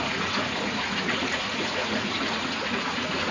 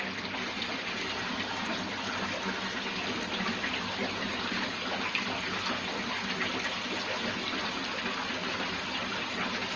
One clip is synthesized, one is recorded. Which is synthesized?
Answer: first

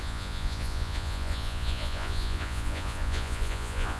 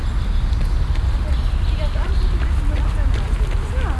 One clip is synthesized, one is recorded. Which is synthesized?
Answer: first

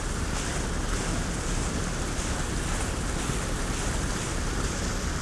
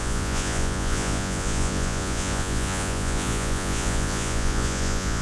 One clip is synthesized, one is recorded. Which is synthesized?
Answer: second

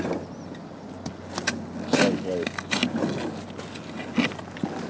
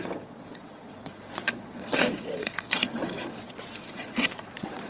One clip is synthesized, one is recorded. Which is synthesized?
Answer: second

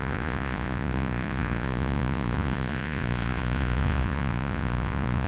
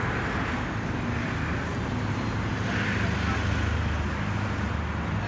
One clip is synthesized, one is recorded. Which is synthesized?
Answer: first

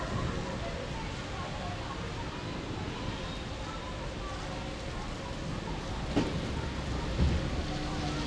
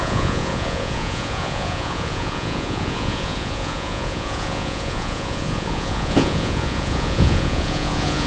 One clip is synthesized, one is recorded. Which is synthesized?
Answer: second